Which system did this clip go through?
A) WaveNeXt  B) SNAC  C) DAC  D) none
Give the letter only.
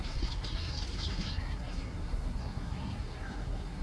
B